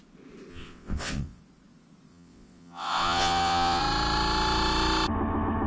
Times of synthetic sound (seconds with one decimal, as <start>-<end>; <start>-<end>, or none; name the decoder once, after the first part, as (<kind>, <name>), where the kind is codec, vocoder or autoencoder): 0.5-1.4 (vocoder, WaveNeXt); 2.1-3.8